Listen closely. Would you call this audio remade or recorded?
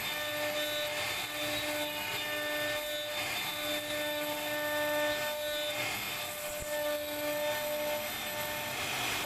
recorded